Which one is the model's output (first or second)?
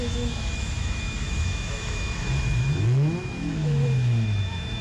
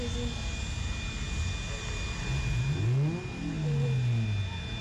first